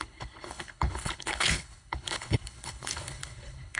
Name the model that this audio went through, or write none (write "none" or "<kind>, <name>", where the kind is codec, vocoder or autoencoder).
codec, HILCodec